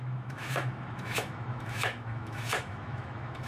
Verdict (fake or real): fake